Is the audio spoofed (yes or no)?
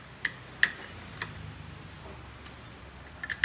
no